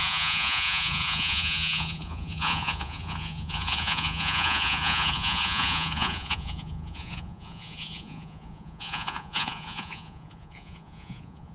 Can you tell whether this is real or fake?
fake